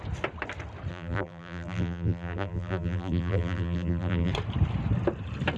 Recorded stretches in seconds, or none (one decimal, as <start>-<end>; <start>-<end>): 0.0-0.9; 4.3-5.6